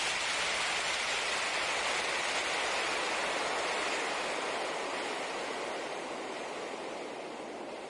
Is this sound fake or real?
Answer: real